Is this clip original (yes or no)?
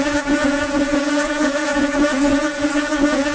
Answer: no